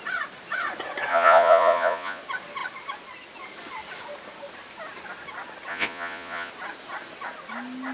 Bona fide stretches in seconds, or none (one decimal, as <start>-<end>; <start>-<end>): 0.0-1.1; 2.2-5.7; 6.5-7.9